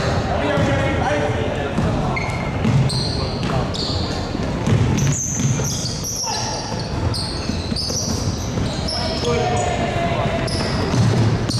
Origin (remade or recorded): recorded